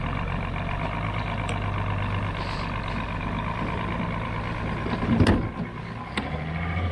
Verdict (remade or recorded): recorded